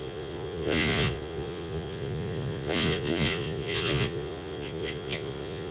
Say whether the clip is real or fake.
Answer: fake